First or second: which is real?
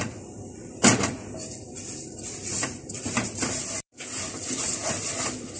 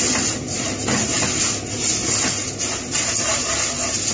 second